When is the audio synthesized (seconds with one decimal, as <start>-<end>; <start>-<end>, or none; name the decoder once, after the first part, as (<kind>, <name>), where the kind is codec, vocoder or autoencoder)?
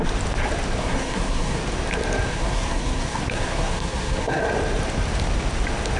0.8-1.6 (codec, SNAC); 2.3-4.4